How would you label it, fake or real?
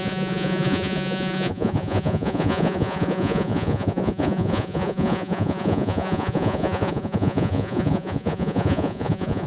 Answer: fake